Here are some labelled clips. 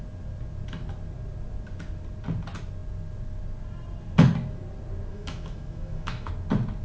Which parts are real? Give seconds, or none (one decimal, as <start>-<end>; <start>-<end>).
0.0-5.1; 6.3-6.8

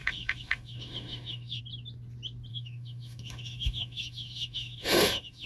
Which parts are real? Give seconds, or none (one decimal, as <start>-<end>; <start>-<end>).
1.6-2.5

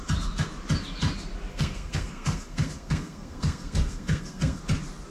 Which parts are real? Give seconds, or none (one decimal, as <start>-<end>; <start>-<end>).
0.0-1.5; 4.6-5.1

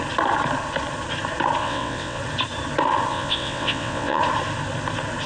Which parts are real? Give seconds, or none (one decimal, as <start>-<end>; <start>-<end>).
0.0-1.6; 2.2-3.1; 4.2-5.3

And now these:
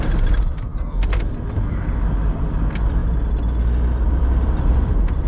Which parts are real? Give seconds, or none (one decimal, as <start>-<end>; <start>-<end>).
3.0-4.1

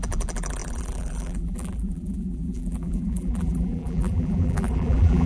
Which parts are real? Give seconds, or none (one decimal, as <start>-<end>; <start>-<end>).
none

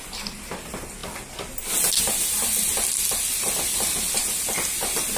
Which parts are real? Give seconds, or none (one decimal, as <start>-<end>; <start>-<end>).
0.0-5.2